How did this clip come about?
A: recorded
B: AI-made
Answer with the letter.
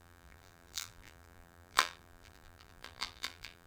B